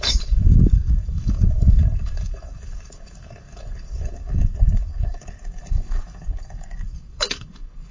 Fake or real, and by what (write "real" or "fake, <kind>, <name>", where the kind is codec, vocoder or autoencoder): fake, codec, DAC